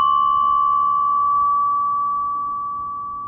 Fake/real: real